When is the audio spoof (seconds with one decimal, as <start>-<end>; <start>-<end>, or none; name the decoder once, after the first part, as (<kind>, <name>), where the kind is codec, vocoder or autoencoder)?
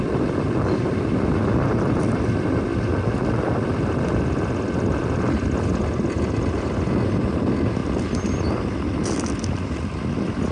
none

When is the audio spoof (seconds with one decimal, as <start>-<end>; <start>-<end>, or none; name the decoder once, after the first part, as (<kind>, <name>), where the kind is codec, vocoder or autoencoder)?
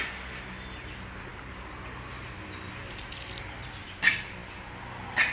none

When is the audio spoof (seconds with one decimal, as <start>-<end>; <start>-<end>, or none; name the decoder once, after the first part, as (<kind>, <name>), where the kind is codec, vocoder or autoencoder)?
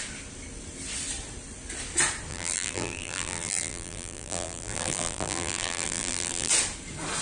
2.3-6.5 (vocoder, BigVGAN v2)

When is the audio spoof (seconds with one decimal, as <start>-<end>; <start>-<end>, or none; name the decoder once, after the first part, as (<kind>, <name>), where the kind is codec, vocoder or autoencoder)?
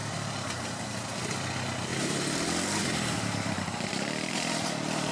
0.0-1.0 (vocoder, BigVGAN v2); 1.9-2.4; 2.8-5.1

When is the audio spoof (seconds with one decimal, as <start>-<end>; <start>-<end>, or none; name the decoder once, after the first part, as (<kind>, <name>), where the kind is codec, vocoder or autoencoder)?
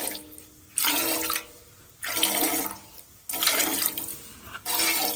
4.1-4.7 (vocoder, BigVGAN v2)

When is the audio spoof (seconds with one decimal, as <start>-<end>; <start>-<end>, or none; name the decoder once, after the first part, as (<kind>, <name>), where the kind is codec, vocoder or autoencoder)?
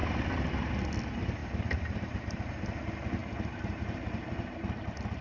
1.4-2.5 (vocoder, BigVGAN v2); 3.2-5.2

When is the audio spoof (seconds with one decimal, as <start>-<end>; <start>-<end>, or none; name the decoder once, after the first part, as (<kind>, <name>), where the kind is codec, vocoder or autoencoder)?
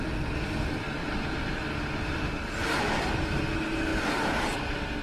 1.0-2.3 (vocoder, BigVGAN v2); 3.9-5.0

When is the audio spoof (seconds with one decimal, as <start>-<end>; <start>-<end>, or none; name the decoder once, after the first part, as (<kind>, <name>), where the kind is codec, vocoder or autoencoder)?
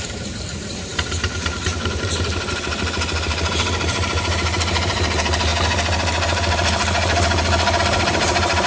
0.0-5.5 (vocoder, BigVGAN v2); 7.8-8.7